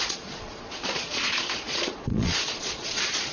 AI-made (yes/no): yes